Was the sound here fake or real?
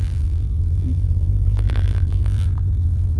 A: fake